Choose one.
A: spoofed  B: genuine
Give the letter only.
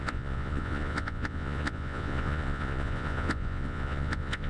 A